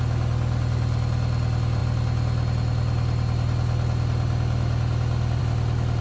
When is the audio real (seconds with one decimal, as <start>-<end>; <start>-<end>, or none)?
0.0-6.0